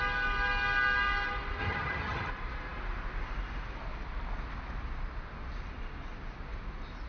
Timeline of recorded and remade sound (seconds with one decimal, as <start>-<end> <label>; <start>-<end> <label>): 0.0-1.6 recorded; 1.6-2.3 remade; 2.3-7.1 recorded